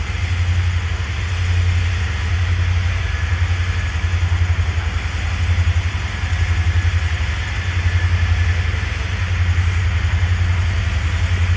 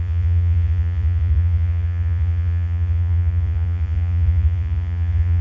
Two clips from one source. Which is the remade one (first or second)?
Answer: second